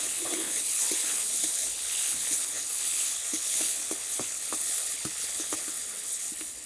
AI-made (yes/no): yes